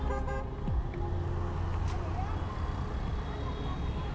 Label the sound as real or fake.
real